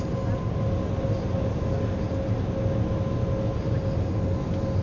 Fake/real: real